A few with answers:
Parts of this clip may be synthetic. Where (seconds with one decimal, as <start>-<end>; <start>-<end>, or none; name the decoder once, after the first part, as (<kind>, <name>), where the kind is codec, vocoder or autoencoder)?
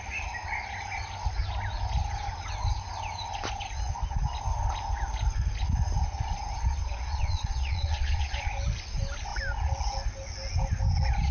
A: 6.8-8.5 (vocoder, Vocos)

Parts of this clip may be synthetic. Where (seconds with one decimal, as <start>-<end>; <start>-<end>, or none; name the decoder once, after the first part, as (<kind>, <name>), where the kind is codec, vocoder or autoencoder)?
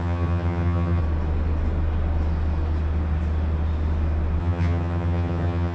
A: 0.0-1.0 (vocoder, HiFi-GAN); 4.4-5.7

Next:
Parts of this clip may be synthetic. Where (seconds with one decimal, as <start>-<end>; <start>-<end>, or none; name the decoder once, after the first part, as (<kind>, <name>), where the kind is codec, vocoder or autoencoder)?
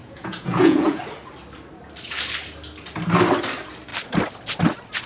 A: 0.0-1.0 (vocoder, Vocos)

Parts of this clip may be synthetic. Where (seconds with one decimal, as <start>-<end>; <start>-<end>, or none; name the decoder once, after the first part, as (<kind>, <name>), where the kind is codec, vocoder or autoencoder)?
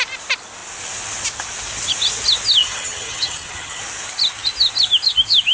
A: 2.6-3.8 (vocoder, HiFi-GAN)